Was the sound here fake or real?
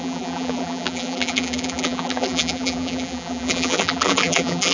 fake